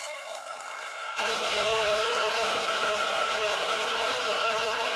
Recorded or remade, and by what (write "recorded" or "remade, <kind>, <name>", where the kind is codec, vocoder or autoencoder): remade, codec, SNAC